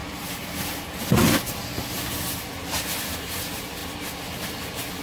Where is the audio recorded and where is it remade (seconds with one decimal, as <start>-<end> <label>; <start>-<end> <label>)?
0.0-5.0 recorded